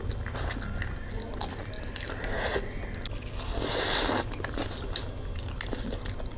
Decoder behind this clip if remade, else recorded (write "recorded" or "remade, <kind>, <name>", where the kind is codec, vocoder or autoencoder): recorded